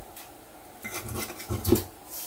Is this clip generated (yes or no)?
no